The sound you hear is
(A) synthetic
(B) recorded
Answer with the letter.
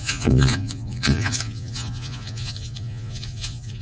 A